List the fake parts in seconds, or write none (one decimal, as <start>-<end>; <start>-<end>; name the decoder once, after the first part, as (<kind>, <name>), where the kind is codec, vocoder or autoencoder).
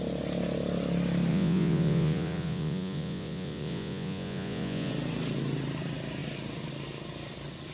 1.3-4.9 (vocoder, Vocos)